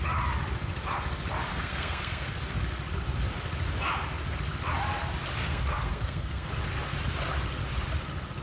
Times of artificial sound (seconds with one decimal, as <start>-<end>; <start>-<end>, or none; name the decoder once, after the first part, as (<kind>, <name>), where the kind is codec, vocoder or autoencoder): 1.5-2.4 (codec, SNAC); 5.4-6.5